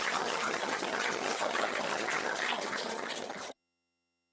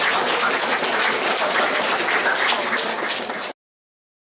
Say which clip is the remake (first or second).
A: first